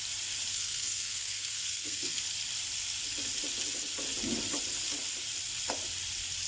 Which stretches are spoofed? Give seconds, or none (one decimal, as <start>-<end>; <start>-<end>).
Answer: 0.5-2.2